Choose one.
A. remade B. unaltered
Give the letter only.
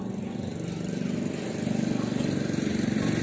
B